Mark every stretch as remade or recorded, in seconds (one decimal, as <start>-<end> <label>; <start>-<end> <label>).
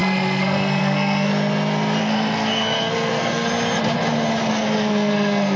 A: 0.0-1.3 remade; 1.3-2.0 recorded; 2.0-3.5 remade; 3.5-4.5 recorded; 4.5-5.6 remade